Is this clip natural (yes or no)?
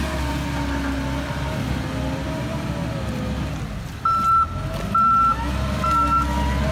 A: yes